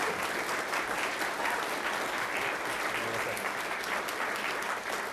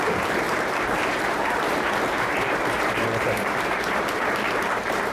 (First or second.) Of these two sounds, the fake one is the second